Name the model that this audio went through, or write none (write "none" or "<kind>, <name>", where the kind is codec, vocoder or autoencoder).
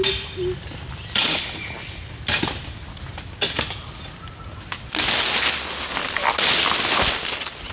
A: none